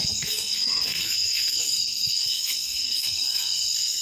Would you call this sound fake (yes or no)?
yes